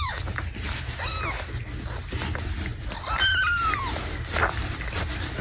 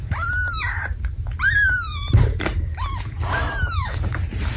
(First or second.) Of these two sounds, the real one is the first